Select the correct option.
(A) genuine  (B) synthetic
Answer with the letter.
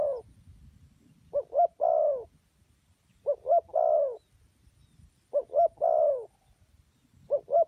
A